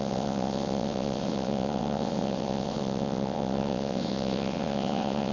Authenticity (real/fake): fake